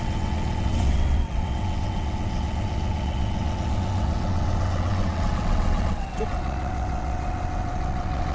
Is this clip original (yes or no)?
no